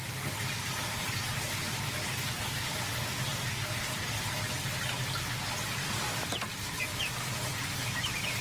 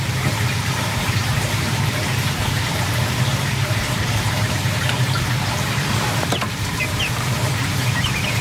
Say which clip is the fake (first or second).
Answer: second